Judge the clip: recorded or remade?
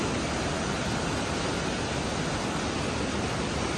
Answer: recorded